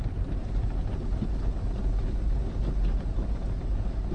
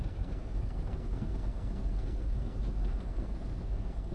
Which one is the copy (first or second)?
second